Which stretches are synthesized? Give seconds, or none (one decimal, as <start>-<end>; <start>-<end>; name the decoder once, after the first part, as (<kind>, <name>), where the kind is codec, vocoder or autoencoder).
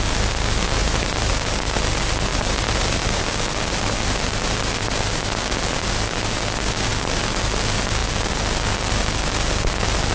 0.8-1.3 (vocoder, BigVGAN v2); 2.3-3.2